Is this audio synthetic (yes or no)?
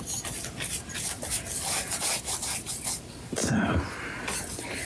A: no